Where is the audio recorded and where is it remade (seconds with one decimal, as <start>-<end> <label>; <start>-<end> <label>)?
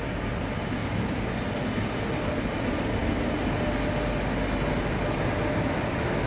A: 0.0-6.3 recorded